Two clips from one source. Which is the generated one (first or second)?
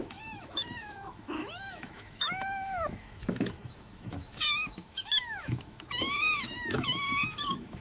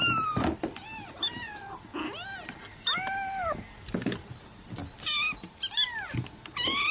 first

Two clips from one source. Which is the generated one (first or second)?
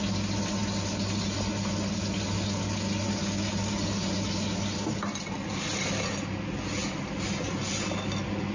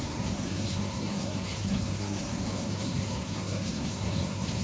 second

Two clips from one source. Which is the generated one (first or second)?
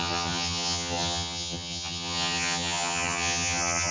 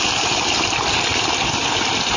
first